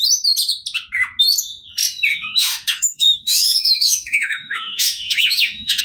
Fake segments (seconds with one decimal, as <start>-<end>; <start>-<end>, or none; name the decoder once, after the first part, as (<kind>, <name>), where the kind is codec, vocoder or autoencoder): 2.1-5.8 (autoencoder, DAC-VAE)